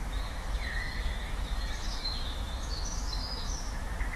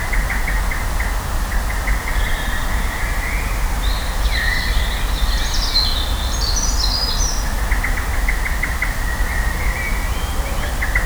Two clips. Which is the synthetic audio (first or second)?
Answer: first